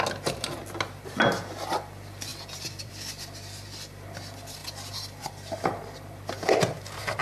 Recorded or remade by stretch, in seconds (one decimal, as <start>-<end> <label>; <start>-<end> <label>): 0.0-2.3 recorded; 2.3-2.9 remade; 2.9-7.2 recorded